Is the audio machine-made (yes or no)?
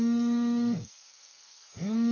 yes